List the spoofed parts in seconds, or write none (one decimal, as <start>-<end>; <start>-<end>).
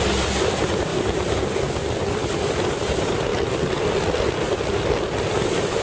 none